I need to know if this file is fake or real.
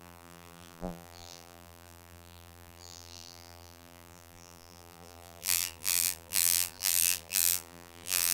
fake